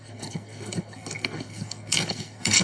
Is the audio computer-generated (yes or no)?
yes